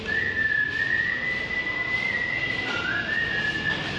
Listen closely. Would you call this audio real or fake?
real